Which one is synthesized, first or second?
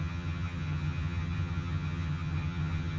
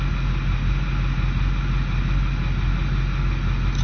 first